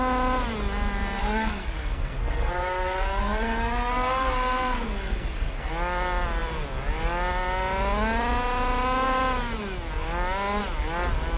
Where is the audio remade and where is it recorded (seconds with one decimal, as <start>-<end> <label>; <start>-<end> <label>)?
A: 0.0-1.2 recorded; 1.2-5.7 remade; 5.7-11.4 recorded